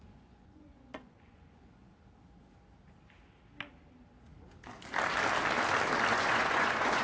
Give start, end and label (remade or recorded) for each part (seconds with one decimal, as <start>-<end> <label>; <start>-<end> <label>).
0.0-1.9 remade; 1.9-6.1 recorded; 6.1-7.0 remade